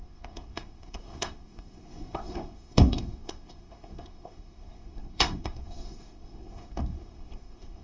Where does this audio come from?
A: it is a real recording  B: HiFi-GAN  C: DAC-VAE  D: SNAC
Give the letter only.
D